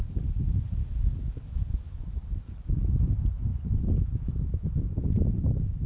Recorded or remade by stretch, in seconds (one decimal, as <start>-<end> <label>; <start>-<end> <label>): 0.0-0.8 recorded; 0.8-2.9 remade; 2.9-3.5 recorded; 3.5-5.9 remade